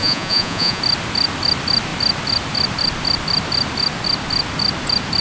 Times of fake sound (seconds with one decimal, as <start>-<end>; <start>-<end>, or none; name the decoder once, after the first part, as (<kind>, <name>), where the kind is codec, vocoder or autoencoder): 0.0-0.8 (vocoder, Vocos)